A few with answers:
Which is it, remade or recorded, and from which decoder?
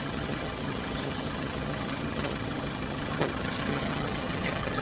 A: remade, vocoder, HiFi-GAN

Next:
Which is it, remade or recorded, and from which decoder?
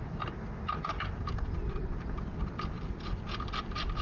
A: recorded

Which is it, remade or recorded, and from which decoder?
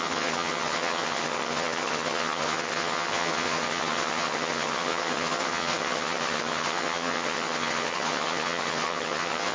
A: remade, vocoder, HiFi-GAN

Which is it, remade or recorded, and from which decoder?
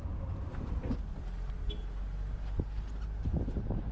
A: recorded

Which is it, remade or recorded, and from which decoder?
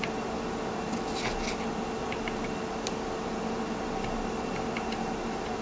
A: recorded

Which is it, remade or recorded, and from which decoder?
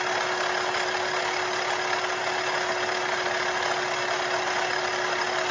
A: recorded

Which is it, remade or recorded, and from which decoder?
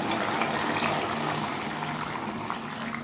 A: recorded